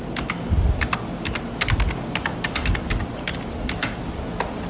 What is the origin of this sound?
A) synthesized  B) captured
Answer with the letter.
B